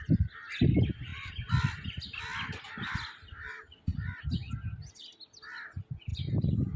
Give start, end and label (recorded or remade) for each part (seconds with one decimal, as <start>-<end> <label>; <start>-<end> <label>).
0.0-1.1 recorded; 1.1-4.2 remade; 4.2-6.1 recorded; 6.1-6.8 remade